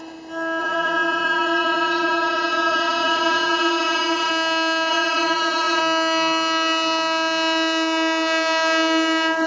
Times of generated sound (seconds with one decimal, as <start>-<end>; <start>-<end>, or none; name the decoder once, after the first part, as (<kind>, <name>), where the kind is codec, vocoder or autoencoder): 0.6-4.3 (vocoder, Vocos); 4.9-5.8